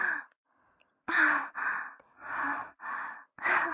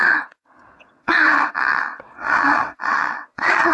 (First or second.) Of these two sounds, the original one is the first